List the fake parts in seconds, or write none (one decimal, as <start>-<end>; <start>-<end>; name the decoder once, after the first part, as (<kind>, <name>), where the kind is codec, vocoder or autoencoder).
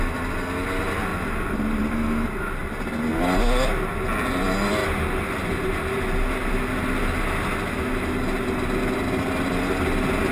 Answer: 1.1-1.9 (vocoder, BigVGAN v2)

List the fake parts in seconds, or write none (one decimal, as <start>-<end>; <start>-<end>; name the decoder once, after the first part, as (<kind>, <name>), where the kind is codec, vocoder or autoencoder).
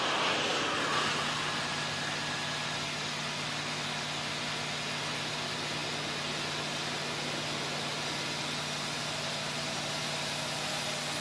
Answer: none